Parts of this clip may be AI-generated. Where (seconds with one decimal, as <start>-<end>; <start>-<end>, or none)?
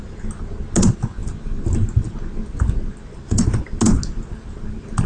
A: none